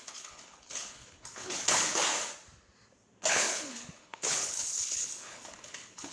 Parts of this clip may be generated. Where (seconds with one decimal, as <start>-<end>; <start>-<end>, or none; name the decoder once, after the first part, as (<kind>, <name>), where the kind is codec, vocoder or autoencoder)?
0.0-2.1 (codec, HILCodec); 3.3-6.1